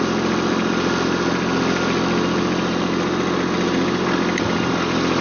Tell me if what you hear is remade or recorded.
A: recorded